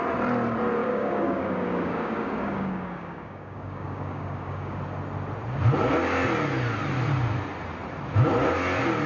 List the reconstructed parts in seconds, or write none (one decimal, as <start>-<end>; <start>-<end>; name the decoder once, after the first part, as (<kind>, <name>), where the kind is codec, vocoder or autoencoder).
0.8-4.8 (codec, DAC)